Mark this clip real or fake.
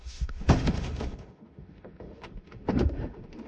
fake